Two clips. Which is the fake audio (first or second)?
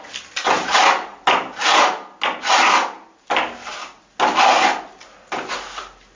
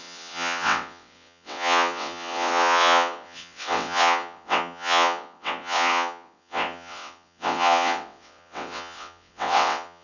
second